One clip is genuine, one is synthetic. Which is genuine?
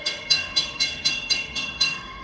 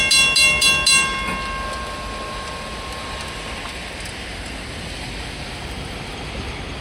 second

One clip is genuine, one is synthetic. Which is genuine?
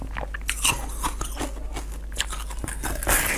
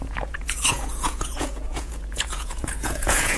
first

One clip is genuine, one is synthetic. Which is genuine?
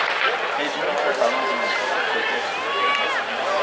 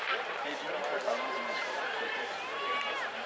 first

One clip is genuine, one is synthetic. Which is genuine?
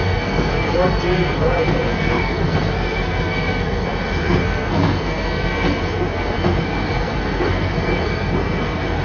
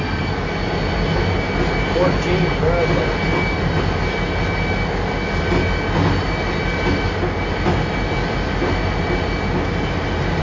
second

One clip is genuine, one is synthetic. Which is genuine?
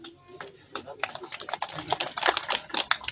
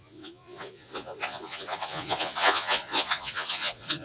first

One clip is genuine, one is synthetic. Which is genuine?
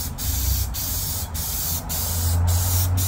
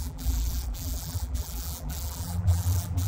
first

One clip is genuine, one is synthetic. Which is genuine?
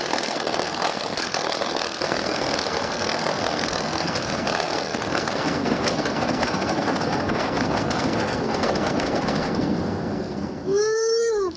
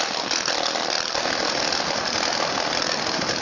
second